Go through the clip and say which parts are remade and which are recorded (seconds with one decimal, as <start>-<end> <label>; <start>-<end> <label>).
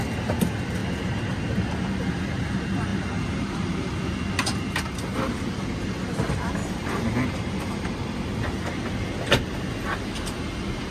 0.0-2.9 recorded; 2.9-3.9 remade; 3.9-6.6 recorded; 6.6-7.9 remade; 7.9-10.9 recorded